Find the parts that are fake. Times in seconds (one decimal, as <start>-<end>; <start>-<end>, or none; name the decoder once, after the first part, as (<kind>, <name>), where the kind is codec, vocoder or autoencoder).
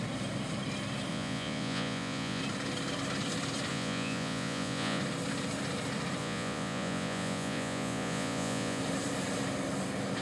1.1-2.4 (vocoder, Vocos); 3.7-5.0; 6.2-8.8